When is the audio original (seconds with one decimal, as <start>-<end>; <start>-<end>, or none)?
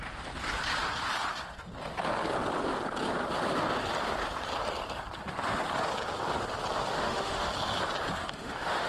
0.0-7.0; 7.5-8.2